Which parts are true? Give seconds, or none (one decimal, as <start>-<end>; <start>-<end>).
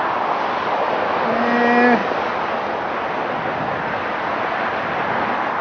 0.0-2.0; 2.9-5.6